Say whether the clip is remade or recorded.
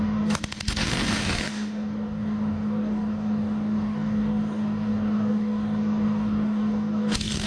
remade